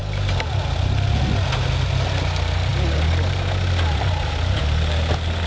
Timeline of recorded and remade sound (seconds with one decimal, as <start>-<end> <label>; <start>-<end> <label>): 0.0-5.5 recorded